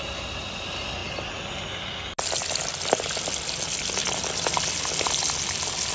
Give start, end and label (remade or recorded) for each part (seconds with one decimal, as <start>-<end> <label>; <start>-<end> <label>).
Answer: 0.0-5.9 recorded